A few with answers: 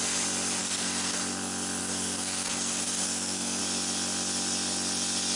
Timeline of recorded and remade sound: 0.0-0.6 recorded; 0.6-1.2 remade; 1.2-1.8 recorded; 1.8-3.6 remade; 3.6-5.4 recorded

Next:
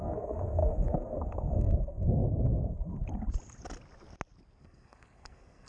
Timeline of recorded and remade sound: 0.0-2.2 remade; 2.2-4.6 recorded; 4.6-5.7 remade

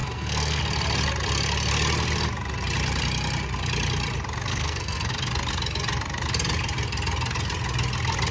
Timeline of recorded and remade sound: 0.0-0.6 remade; 0.6-4.5 recorded; 4.5-5.1 remade; 5.1-8.3 recorded

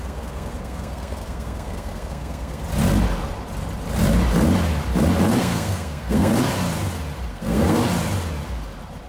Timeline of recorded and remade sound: 0.0-2.6 remade; 2.6-5.4 recorded; 5.4-6.3 remade; 6.3-7.3 recorded; 7.3-7.8 remade; 7.8-9.1 recorded

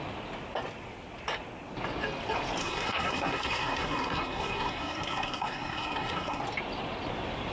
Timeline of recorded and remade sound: 0.0-2.6 recorded; 2.6-6.4 remade; 6.4-7.5 recorded

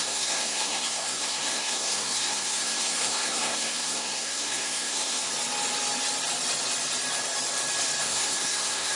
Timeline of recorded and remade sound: 0.0-5.3 remade; 5.3-8.0 recorded; 8.0-9.0 remade